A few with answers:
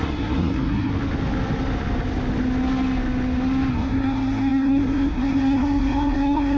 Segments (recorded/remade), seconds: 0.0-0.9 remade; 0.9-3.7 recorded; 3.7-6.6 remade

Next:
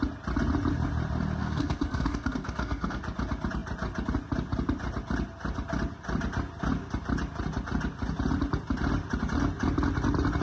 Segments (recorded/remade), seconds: 0.0-1.4 recorded; 1.4-3.0 remade; 3.0-10.4 recorded

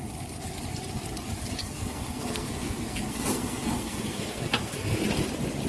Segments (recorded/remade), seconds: 0.0-1.6 recorded; 1.6-5.0 remade; 5.0-5.7 recorded

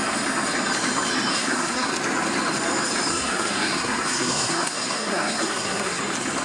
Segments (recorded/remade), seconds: 0.0-1.3 recorded; 1.3-1.9 remade; 1.9-3.1 recorded; 3.1-6.0 remade; 6.0-6.4 recorded

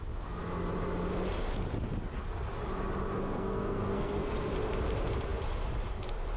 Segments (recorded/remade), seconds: 0.0-3.2 recorded; 3.2-4.5 remade; 4.5-6.4 recorded

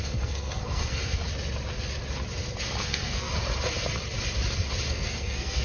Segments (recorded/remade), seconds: 0.0-1.2 remade; 1.2-2.8 recorded; 2.8-3.3 remade; 3.3-4.9 recorded; 4.9-5.6 remade

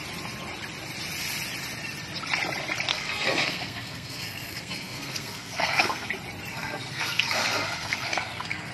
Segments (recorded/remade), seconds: 0.0-2.9 recorded; 2.9-6.1 remade; 6.1-6.5 recorded; 6.5-8.7 remade

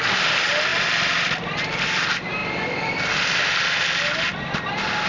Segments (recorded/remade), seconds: 0.0-5.1 recorded